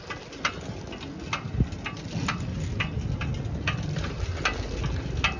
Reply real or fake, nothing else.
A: real